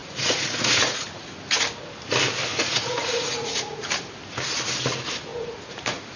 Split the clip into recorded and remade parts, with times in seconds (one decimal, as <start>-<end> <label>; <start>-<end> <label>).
0.0-1.6 remade; 1.6-2.5 recorded; 2.5-3.9 remade; 3.9-5.3 recorded; 5.3-6.2 remade